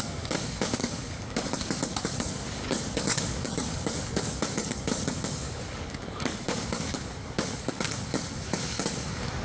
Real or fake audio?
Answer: fake